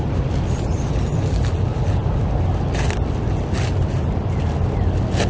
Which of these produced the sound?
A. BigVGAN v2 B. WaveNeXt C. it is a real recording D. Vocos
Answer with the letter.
C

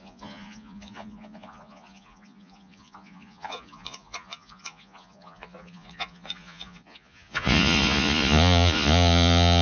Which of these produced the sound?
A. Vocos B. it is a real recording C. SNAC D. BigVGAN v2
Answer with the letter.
A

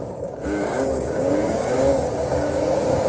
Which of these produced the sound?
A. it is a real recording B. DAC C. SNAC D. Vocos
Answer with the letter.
B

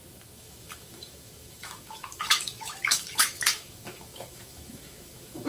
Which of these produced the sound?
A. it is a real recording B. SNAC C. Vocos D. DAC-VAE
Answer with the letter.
D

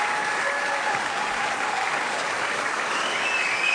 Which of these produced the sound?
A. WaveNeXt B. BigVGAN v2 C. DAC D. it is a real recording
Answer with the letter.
C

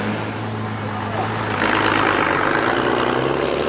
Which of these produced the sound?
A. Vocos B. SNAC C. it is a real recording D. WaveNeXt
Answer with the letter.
C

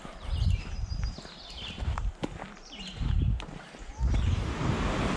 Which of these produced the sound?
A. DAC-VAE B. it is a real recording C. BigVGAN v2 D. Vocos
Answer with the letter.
B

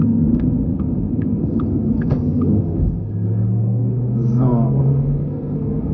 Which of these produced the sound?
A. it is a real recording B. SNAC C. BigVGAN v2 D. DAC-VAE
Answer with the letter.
B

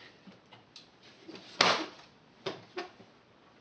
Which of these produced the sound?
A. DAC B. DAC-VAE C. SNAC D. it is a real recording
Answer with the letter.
D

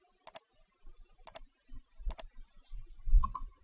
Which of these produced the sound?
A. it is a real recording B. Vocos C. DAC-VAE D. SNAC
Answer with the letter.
A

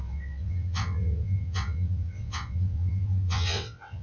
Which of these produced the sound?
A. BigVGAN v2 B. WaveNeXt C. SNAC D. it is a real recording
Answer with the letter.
B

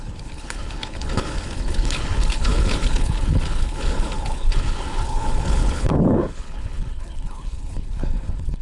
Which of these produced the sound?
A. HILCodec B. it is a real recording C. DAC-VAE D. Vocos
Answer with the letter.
A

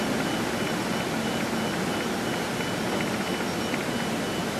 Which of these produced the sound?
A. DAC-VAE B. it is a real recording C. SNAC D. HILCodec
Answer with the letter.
B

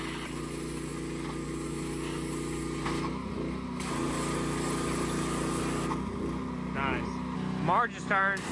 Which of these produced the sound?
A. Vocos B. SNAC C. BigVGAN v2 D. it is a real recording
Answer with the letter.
D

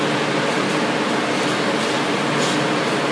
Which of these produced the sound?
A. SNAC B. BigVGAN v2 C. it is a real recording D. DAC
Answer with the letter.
C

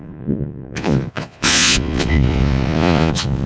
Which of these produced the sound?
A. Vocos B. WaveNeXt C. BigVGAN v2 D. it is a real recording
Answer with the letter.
A